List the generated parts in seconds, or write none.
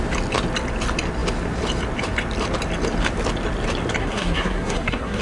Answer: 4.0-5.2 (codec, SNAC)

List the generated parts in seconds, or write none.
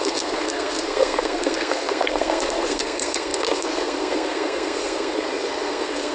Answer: 0.0-6.1 (codec, SNAC)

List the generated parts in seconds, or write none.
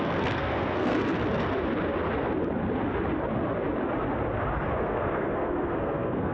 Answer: 0.0-1.2 (codec, SNAC); 4.8-6.3